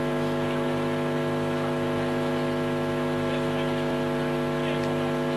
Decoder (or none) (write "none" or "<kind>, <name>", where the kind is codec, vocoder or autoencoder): none